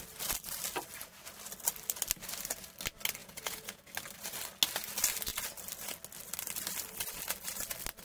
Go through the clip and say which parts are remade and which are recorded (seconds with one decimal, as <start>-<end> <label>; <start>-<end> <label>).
0.0-3.2 recorded; 3.2-3.8 remade; 3.8-8.0 recorded